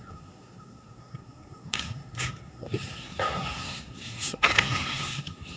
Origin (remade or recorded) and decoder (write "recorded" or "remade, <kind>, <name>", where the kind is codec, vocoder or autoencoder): remade, codec, SNAC